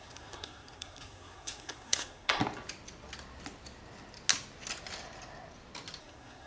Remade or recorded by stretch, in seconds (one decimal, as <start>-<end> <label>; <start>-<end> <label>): 0.0-2.4 remade; 2.4-6.0 recorded; 6.0-6.5 remade